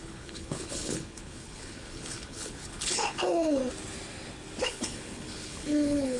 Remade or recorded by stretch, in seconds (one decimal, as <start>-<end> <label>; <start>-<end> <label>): 0.0-3.6 remade; 3.6-4.6 recorded; 4.6-6.2 remade